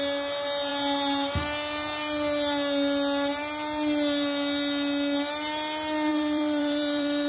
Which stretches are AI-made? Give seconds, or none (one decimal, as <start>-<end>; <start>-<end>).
6.1-7.3